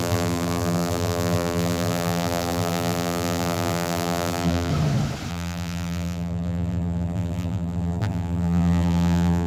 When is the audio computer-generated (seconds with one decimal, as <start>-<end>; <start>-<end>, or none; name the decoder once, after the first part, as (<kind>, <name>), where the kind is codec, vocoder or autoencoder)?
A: 0.0-4.7 (vocoder, BigVGAN v2); 5.3-9.5